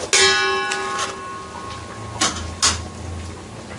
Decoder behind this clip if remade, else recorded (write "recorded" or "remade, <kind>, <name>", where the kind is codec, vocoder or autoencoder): recorded